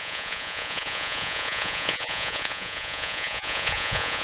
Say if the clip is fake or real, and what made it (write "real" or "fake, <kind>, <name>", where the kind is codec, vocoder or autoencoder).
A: fake, vocoder, Vocos